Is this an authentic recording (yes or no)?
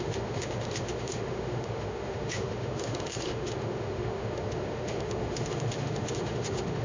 no